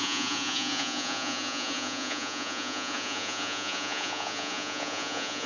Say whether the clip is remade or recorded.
remade